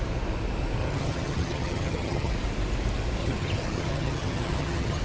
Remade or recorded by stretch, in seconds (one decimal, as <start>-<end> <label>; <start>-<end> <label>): 0.0-0.8 recorded; 0.8-2.3 remade; 2.3-3.2 recorded; 3.2-5.0 remade